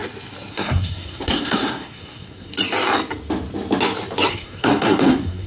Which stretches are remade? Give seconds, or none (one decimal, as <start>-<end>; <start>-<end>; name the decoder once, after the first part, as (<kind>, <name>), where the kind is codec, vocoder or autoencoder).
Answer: 0.5-2.5 (codec, SNAC); 4.3-5.5